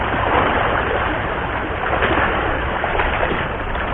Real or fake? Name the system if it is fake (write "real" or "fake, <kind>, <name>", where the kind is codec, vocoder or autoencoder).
fake, vocoder, BigVGAN v2